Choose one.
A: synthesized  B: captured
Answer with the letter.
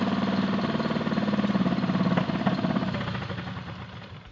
B